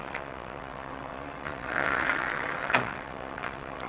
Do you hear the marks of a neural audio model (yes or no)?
yes